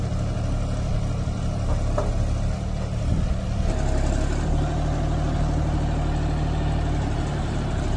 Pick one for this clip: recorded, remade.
recorded